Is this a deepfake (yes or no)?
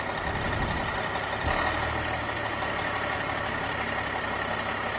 no